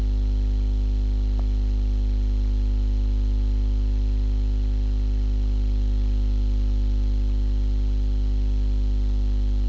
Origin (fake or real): real